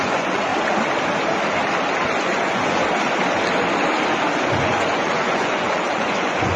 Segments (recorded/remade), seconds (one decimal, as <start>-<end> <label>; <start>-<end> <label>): 0.0-0.5 remade; 0.5-2.2 recorded; 2.2-2.8 remade; 2.8-4.6 recorded; 4.6-6.6 remade